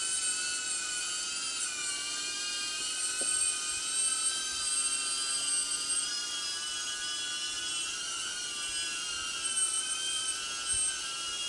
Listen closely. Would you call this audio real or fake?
real